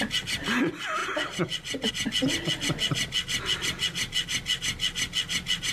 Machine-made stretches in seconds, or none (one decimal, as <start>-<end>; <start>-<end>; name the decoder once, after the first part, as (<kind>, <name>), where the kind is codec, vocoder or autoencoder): none